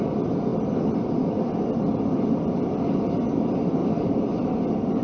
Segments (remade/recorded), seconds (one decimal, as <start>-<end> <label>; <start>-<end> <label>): 0.0-3.8 recorded; 3.8-4.5 remade; 4.5-5.0 recorded